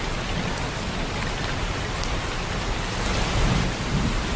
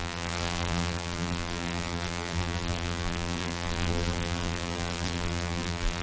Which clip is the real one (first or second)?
first